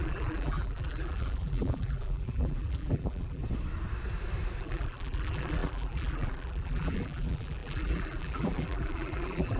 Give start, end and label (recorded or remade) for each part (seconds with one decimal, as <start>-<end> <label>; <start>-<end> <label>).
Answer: 0.0-3.4 remade; 3.4-4.6 recorded; 4.6-9.6 remade